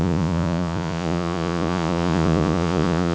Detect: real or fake fake